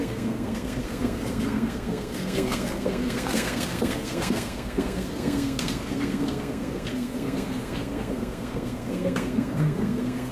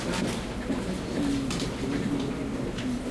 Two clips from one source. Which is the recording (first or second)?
second